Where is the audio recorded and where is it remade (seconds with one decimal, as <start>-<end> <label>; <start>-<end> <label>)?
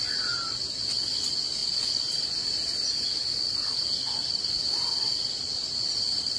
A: 0.0-6.4 recorded